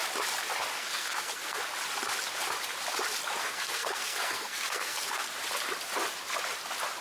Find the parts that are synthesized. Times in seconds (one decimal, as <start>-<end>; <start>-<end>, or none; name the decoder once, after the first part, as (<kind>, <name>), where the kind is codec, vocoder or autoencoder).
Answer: 0.7-1.6 (codec, SNAC); 3.4-5.3